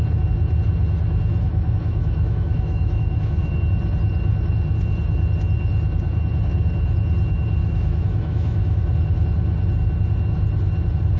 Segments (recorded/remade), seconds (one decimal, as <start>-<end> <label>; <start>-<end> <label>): 0.0-1.5 recorded; 1.5-3.5 remade; 3.5-7.6 recorded; 7.6-8.9 remade; 8.9-11.2 recorded